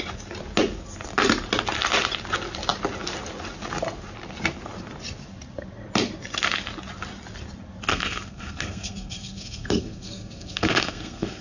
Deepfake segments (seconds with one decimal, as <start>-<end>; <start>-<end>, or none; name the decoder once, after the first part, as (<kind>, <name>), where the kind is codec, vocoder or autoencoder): 7.9-11.4 (codec, SNAC)